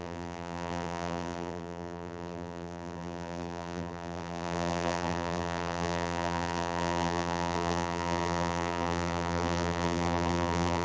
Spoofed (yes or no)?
yes